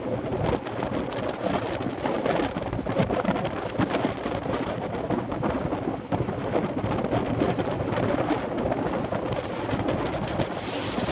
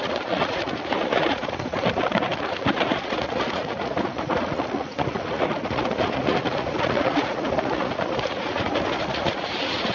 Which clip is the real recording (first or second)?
first